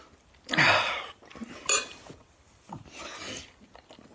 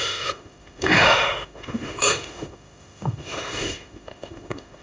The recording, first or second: first